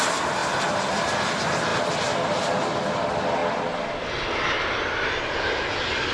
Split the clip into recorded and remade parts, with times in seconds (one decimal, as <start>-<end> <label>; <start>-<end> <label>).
0.0-6.1 recorded